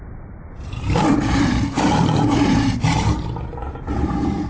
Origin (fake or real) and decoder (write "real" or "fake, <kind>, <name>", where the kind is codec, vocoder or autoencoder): fake, vocoder, BigVGAN v2